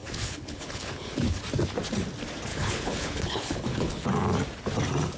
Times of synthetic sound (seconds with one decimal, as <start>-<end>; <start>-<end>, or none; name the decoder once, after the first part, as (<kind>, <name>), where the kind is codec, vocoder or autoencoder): 0.0-1.4 (codec, HILCodec); 2.5-4.1